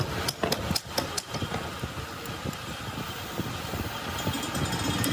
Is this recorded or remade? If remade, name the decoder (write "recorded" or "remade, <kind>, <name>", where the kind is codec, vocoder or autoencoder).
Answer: recorded